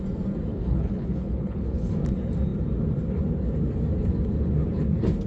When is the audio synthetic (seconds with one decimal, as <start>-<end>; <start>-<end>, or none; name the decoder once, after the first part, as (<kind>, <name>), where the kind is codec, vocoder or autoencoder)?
0.5-1.9 (codec, HILCodec)